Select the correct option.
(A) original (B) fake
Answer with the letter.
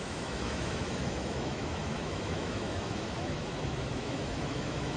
B